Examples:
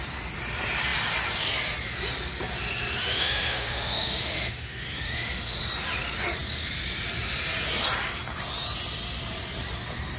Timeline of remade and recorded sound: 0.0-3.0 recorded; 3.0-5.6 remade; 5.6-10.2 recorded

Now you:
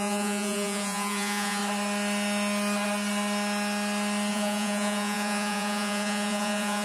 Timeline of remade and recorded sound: 0.0-1.6 remade; 1.6-4.3 recorded; 4.3-6.8 remade